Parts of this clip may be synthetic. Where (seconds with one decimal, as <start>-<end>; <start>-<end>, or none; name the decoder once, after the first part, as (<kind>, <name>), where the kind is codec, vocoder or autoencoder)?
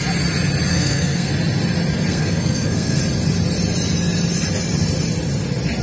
0.7-1.3 (codec, SNAC); 2.1-3.0